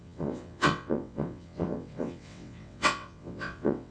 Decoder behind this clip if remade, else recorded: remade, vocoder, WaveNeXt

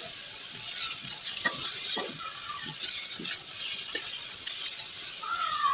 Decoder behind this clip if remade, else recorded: remade, vocoder, WaveNeXt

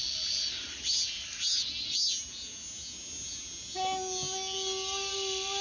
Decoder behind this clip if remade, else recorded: recorded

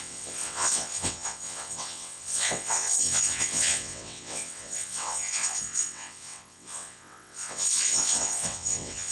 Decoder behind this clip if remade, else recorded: remade, vocoder, WaveNeXt